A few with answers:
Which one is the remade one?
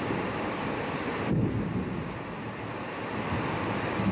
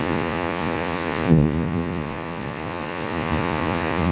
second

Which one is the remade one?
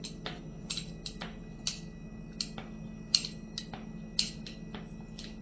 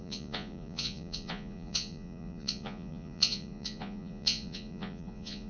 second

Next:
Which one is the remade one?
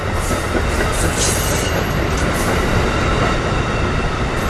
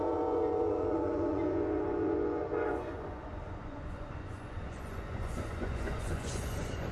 second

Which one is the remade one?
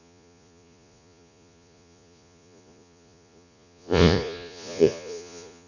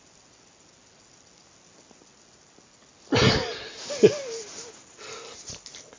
first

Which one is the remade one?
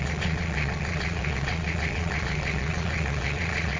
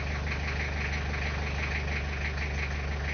first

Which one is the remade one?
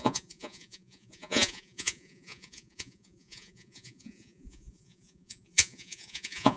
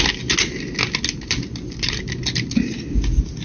first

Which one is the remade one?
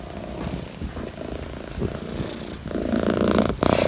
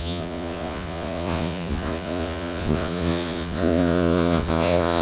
second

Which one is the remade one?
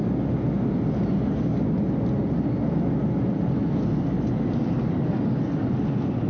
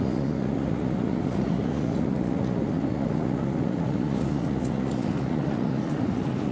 second